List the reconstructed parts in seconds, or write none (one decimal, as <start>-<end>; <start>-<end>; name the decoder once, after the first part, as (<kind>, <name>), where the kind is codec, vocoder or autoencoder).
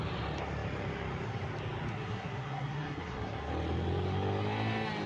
1.9-3.5 (codec, SNAC)